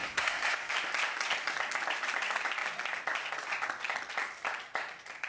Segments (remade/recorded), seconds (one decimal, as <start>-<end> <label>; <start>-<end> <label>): 0.0-0.7 remade; 0.7-5.3 recorded